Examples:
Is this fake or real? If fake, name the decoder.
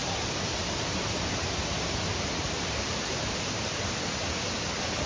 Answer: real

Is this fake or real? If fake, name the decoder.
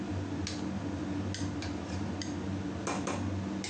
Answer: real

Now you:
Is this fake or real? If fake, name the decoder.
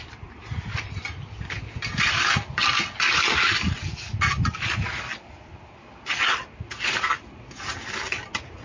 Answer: real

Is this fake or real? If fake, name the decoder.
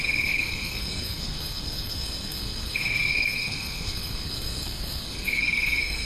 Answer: fake, codec, SNAC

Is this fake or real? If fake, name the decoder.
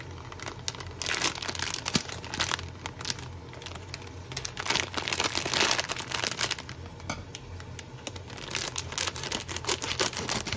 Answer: real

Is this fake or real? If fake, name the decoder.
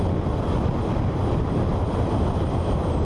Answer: real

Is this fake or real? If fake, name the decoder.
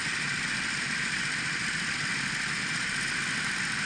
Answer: real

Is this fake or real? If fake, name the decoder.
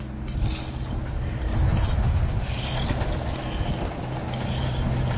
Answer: real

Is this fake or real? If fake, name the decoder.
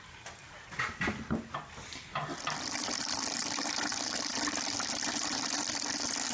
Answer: real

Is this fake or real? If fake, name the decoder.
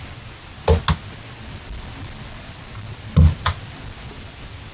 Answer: real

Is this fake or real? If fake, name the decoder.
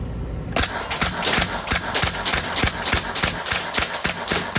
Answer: real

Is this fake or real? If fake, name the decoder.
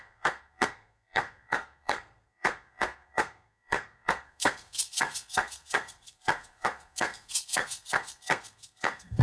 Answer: fake, codec, SNAC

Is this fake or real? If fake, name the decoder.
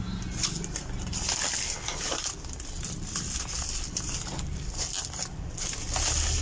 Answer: real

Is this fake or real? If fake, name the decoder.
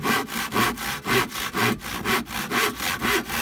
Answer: real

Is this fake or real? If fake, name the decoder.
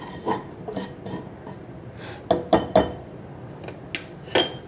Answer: real